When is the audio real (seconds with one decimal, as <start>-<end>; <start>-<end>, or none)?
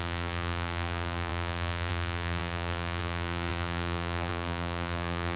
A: none